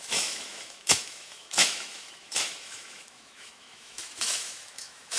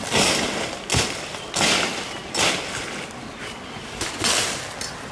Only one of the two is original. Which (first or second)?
second